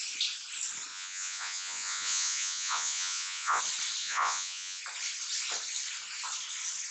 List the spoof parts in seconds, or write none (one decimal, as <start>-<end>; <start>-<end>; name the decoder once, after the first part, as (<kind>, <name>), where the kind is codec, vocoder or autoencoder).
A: 0.9-3.6 (vocoder, Vocos); 4.0-4.8